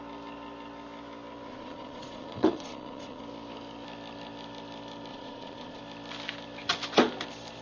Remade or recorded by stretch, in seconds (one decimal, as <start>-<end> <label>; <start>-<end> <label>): 0.0-1.5 recorded; 1.5-3.2 remade; 3.2-5.1 recorded; 5.1-5.8 remade; 5.8-7.6 recorded